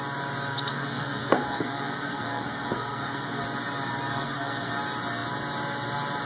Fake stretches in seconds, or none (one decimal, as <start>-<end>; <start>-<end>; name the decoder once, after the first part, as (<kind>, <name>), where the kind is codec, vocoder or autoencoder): 0.5-3.4 (codec, SNAC); 4.1-4.7